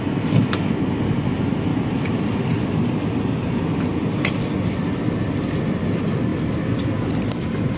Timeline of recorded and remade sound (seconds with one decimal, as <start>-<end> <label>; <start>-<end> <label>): 0.0-7.8 recorded